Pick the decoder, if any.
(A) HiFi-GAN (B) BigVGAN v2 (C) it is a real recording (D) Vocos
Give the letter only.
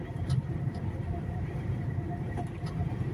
B